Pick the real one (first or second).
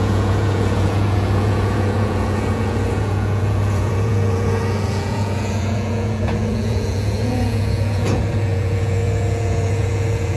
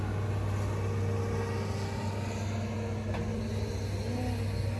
second